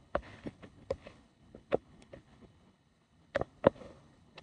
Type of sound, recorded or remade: remade